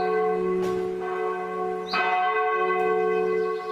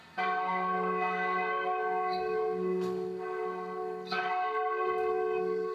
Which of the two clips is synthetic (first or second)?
second